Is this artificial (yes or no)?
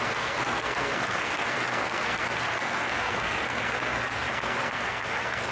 yes